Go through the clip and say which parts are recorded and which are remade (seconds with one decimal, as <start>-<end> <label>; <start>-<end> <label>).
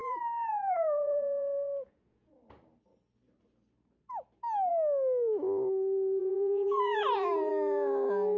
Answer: 0.0-2.3 remade; 2.3-6.2 recorded; 6.2-7.5 remade; 7.5-8.4 recorded